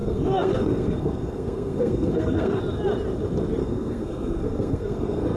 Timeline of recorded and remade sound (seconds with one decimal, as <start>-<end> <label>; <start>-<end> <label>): 0.0-2.6 remade; 2.6-3.6 recorded; 3.6-5.4 remade